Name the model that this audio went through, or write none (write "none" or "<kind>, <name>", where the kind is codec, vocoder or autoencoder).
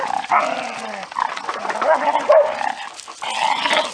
none